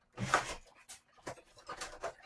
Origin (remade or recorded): recorded